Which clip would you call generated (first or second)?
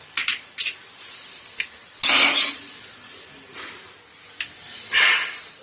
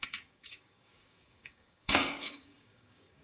second